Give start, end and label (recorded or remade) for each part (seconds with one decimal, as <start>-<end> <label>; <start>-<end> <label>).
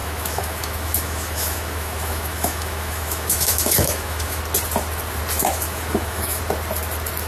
0.0-4.4 remade; 4.4-5.4 recorded; 5.4-6.4 remade; 6.4-7.3 recorded